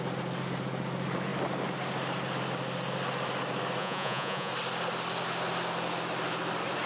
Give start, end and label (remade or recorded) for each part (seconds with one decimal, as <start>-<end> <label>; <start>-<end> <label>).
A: 0.0-3.8 recorded; 3.8-4.5 remade; 4.5-6.9 recorded